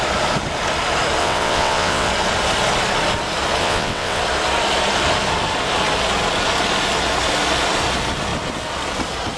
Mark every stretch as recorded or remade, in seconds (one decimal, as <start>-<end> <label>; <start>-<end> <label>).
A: 0.0-1.2 recorded; 1.2-2.1 remade; 2.1-3.6 recorded; 3.6-4.2 remade; 4.2-9.4 recorded